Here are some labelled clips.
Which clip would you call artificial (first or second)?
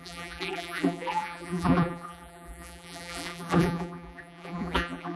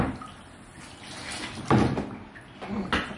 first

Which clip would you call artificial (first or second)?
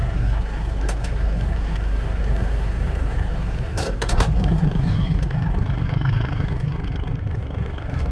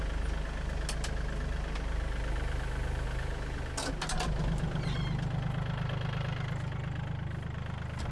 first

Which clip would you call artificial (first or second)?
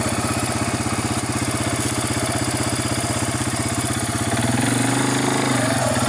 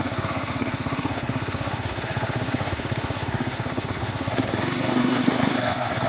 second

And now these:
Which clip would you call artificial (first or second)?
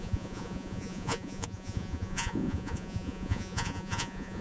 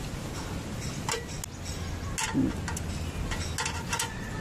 first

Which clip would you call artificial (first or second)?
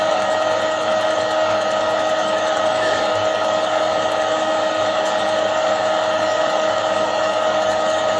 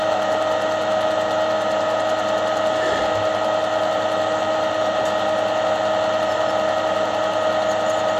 first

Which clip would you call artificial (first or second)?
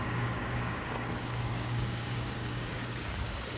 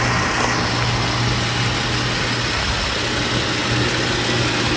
first